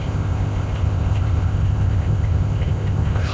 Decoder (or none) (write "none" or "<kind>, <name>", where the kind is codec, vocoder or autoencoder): codec, ZipCodec